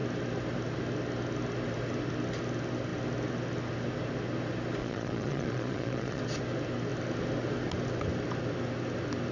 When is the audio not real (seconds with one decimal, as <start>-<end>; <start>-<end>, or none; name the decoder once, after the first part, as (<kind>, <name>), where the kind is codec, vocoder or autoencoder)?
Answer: 4.8-6.2 (vocoder, Vocos)